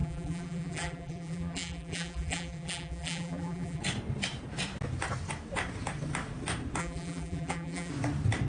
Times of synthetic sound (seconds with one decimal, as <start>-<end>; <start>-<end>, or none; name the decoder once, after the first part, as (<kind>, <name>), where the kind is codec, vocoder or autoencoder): 0.0-3.8 (vocoder, BigVGAN v2); 6.8-7.9